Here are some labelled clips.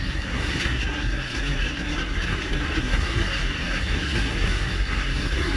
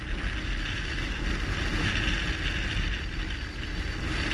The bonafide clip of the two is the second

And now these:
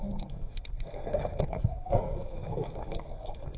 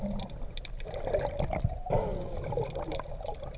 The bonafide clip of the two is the second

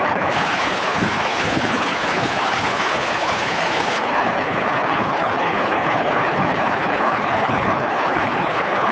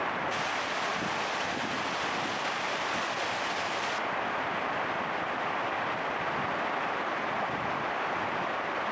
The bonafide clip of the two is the second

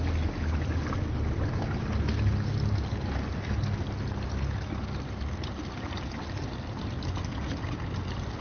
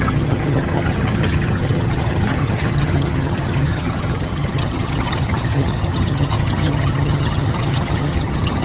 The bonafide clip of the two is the first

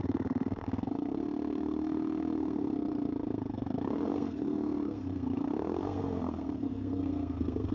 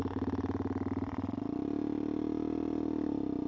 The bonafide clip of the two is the second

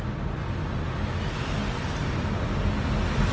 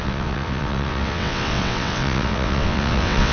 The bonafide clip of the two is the first